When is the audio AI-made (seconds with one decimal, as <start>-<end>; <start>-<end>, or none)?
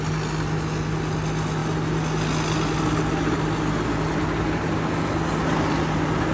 none